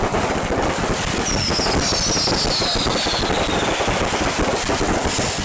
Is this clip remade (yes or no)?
no